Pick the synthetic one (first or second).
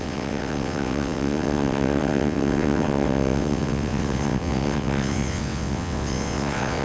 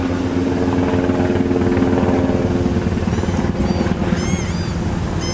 first